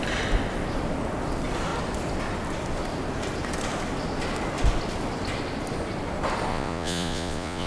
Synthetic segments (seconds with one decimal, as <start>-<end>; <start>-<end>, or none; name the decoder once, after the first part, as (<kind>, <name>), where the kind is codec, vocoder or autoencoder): 6.5-7.7 (vocoder, Vocos)